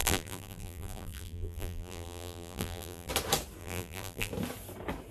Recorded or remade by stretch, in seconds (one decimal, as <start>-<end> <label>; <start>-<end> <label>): 0.0-3.1 remade; 3.1-3.6 recorded; 3.6-4.3 remade; 4.3-5.1 recorded